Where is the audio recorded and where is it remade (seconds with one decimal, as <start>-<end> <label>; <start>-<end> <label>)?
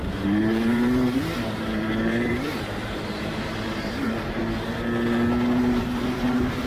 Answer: 0.0-4.4 remade; 4.4-5.6 recorded; 5.6-6.7 remade